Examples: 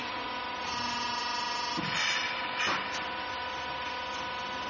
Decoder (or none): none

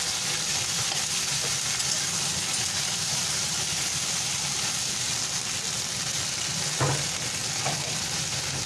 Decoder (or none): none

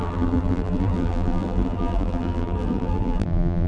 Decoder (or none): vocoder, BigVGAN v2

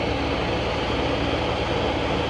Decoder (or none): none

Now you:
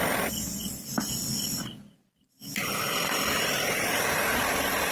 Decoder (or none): none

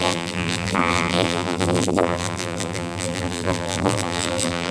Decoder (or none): vocoder, BigVGAN v2